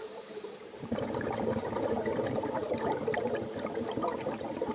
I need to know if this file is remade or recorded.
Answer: remade